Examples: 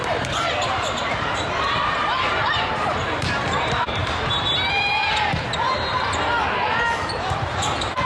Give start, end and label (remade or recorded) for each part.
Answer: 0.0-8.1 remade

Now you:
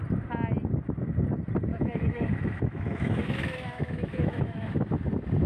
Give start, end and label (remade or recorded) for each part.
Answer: 0.0-1.7 recorded; 1.7-4.9 remade; 4.9-5.5 recorded

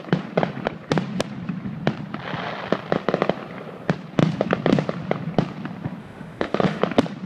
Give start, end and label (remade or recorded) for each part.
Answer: 0.0-6.0 recorded; 6.0-6.8 remade; 6.8-7.3 recorded

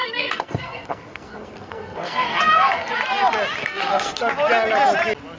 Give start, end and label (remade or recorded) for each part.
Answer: 0.0-2.9 remade; 2.9-3.6 recorded; 3.6-4.3 remade; 4.3-5.4 recorded